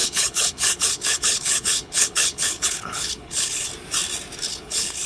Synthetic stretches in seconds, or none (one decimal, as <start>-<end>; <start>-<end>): 0.0-3.7; 4.5-5.1

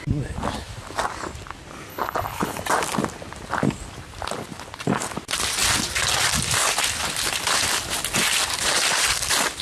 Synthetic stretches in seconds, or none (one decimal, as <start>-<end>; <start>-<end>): 1.9-2.6

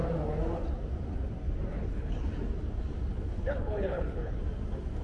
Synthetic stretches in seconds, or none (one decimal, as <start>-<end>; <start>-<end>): 1.7-2.3; 3.1-4.4

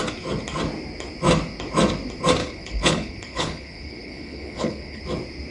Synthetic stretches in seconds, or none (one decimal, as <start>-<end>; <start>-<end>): 2.4-5.0

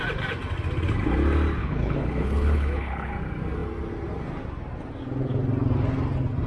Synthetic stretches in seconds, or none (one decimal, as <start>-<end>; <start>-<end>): 1.6-3.1

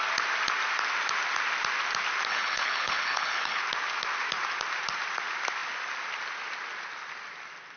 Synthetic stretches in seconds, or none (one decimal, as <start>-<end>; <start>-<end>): 2.3-3.6

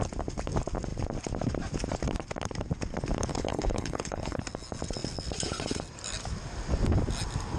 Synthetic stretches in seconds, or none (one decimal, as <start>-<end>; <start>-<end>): 3.3-4.4